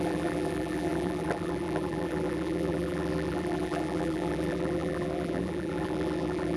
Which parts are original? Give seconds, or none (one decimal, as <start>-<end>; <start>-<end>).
none